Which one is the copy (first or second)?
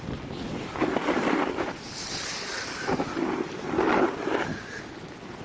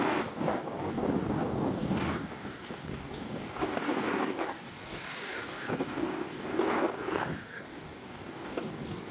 second